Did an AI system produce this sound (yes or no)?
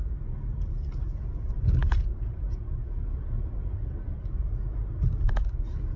no